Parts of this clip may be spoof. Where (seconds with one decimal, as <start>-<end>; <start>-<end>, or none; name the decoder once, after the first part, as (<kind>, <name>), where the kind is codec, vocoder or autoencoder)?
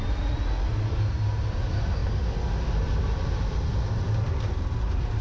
none